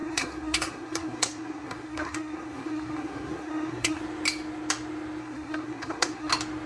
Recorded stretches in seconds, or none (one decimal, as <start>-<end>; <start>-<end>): 4.0-5.2; 6.3-6.7